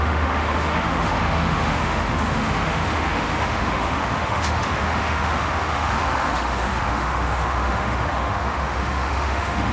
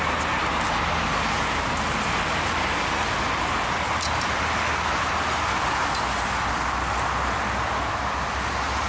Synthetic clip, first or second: first